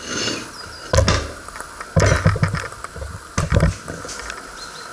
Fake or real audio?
real